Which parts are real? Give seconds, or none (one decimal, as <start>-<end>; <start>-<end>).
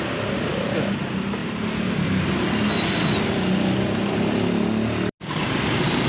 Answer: 0.0-6.1